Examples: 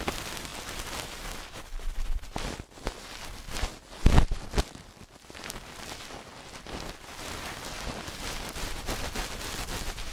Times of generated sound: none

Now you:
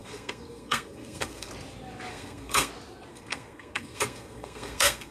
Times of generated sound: 0.0-1.5 (codec, SNAC); 2.1-2.7; 3.1-5.1

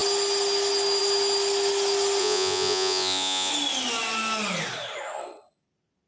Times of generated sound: 2.2-3.5 (vocoder, Vocos)

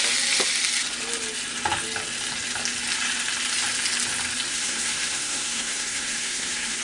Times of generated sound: 4.5-6.8 (codec, SNAC)

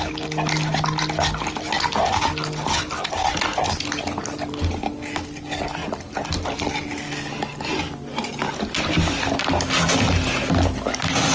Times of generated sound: none

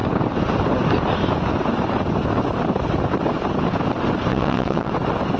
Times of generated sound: 4.3-4.9 (vocoder, WaveNeXt)

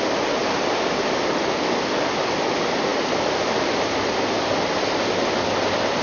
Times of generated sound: 0.4-1.1 (vocoder, BigVGAN v2); 2.9-4.8